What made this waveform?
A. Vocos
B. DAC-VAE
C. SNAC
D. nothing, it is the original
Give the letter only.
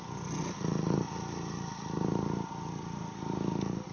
D